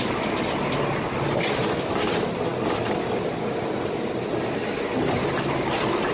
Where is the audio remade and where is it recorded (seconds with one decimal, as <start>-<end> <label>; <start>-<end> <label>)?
0.0-6.1 recorded